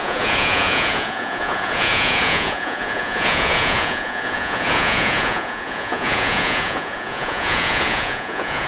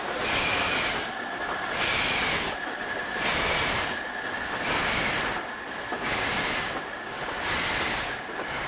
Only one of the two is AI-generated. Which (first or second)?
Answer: first